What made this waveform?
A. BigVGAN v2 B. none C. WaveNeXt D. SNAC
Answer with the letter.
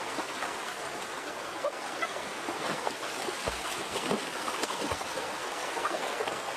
D